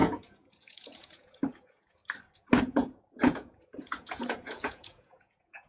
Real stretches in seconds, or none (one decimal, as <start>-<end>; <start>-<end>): 2.0-2.6